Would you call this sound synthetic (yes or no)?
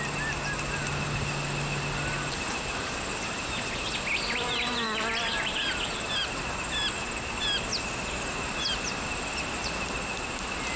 no